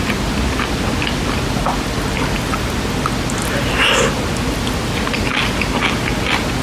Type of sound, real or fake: real